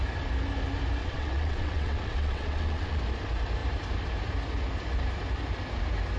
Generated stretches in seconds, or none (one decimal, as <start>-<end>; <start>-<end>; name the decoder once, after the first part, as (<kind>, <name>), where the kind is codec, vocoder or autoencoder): 1.0-3.0 (vocoder, WaveNeXt)